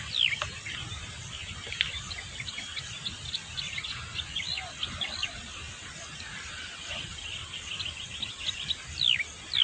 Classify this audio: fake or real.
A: real